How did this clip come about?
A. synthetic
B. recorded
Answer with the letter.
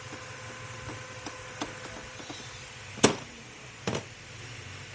B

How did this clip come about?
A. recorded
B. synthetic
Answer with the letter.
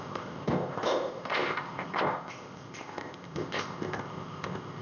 B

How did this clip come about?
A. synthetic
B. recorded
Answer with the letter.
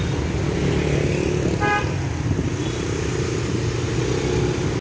B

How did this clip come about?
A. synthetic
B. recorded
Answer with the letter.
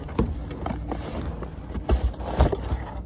B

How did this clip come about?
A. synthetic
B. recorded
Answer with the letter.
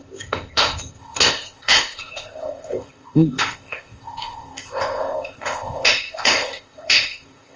A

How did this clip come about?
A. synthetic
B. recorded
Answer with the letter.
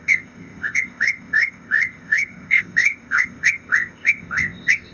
A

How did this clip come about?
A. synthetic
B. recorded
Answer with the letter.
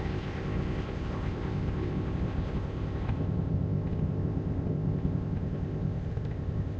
A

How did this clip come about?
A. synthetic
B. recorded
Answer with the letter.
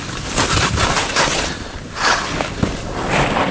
B